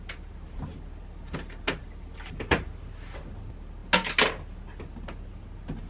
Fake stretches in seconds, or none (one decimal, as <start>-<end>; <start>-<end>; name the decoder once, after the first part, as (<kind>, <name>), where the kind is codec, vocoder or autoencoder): none